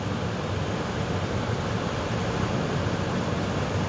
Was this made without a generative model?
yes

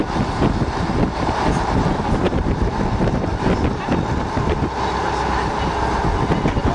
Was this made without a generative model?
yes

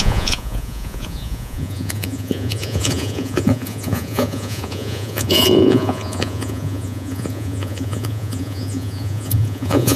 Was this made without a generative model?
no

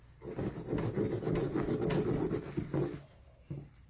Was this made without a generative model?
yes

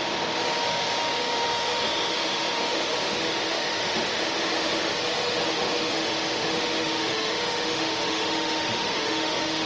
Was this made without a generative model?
no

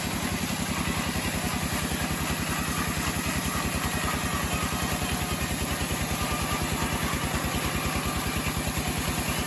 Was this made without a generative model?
yes